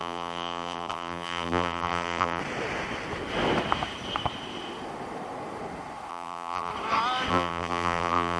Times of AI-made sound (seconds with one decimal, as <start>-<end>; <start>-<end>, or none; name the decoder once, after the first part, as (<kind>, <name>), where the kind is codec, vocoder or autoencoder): 0.0-2.4 (vocoder, BigVGAN v2); 6.1-6.7; 7.3-8.4